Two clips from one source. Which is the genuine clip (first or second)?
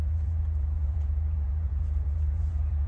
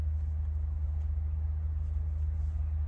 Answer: second